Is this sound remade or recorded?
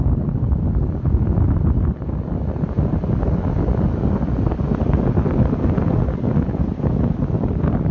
recorded